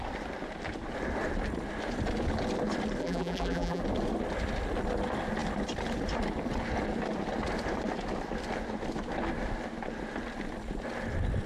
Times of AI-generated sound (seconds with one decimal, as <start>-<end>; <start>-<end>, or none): 3.0-3.8